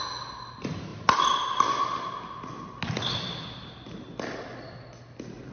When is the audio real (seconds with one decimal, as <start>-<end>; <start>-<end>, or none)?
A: 0.0-5.5